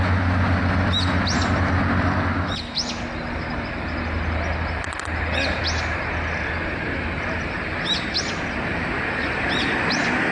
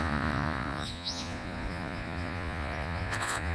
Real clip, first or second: first